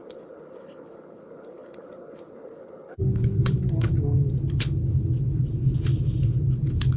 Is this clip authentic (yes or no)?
no